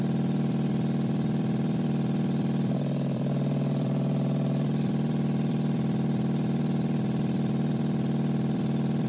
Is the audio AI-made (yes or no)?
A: yes